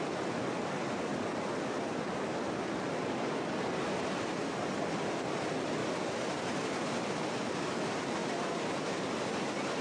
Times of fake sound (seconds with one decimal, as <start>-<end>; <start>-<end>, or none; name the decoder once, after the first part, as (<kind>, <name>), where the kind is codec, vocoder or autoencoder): 5.8-6.9 (vocoder, BigVGAN v2); 8.2-9.0